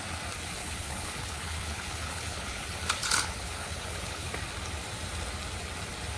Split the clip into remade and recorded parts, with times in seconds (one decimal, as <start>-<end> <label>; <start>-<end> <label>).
0.0-0.6 recorded; 0.6-4.3 remade; 4.3-6.2 recorded